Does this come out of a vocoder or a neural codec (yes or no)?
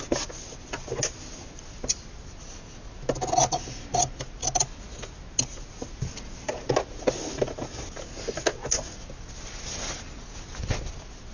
no